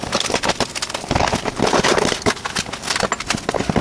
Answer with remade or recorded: recorded